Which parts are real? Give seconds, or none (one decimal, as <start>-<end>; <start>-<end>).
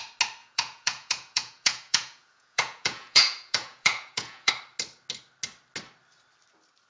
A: 0.0-0.4; 4.5-6.9